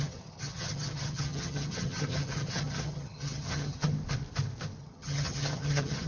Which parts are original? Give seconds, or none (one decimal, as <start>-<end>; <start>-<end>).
3.9-4.8